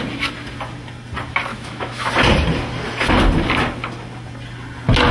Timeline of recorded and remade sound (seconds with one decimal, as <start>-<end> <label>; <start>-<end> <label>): 0.0-1.5 recorded; 1.5-2.1 remade; 2.1-5.1 recorded